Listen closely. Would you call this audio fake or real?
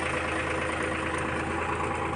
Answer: real